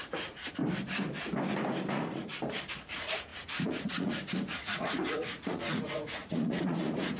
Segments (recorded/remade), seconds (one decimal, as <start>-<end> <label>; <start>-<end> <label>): 0.0-0.6 remade; 0.6-1.9 recorded; 1.9-2.3 remade; 2.3-2.9 recorded; 2.9-7.2 remade